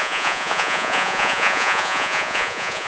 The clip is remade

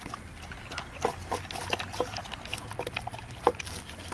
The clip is recorded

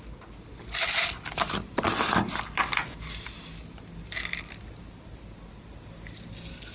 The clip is recorded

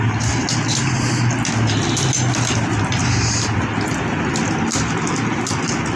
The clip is recorded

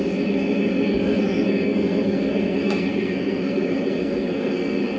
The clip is remade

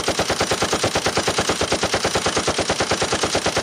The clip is recorded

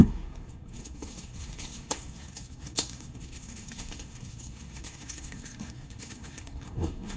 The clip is remade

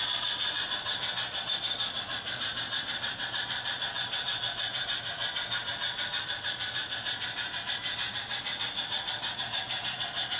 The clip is remade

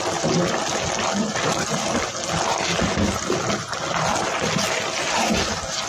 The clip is recorded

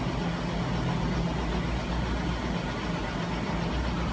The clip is recorded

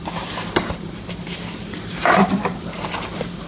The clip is remade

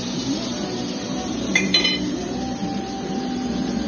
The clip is remade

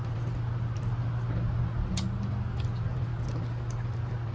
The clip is recorded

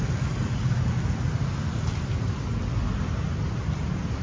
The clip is recorded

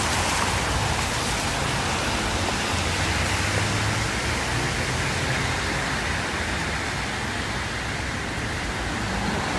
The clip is recorded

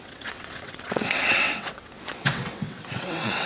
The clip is remade